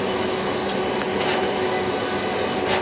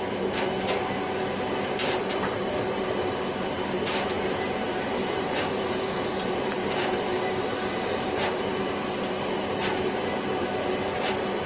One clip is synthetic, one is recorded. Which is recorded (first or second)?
first